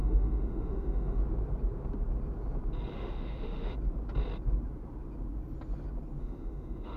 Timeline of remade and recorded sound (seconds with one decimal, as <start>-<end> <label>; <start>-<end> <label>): 0.0-1.2 remade; 1.2-2.9 recorded; 2.9-3.7 remade; 3.7-6.2 recorded; 6.2-7.0 remade